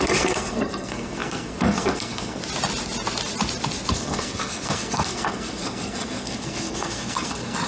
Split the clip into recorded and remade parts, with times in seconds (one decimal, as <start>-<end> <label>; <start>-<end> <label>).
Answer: 0.0-2.4 remade; 2.4-3.9 recorded; 3.9-7.7 remade

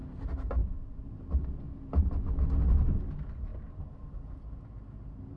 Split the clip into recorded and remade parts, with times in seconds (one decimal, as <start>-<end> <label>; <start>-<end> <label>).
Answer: 0.0-5.4 recorded

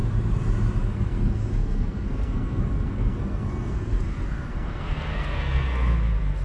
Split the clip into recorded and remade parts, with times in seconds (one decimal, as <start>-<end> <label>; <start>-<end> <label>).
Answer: 0.0-0.8 recorded; 0.8-6.4 remade

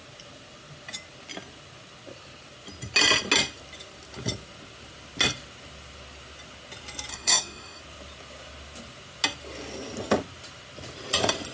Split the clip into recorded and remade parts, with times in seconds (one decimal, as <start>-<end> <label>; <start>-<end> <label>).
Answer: 0.0-7.1 recorded; 7.1-7.8 remade; 7.8-11.5 recorded